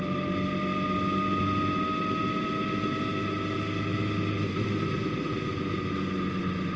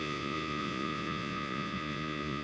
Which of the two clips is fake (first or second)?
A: second